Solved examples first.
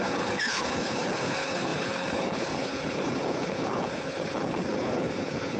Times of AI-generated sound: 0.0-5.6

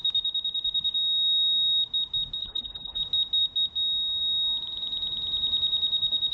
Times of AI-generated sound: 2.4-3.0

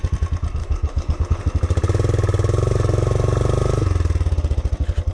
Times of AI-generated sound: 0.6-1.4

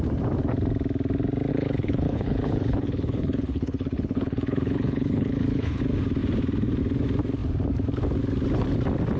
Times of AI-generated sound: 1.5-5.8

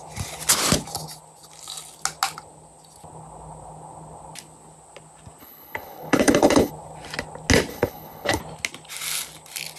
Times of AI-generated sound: 5.4-6.7; 7.7-8.4

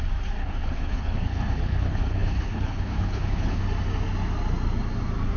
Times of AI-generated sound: 0.4-3.6

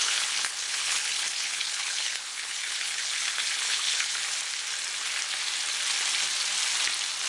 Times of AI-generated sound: 0.0-4.2

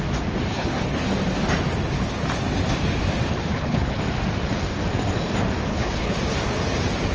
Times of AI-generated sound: 0.5-1.0; 3.4-4.0; 5.7-6.2